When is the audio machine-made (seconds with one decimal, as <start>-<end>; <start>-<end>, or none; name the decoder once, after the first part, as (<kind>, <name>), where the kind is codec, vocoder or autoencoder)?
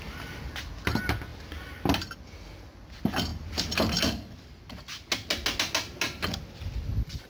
none